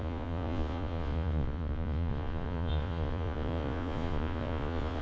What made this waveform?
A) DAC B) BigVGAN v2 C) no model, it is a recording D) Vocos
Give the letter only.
D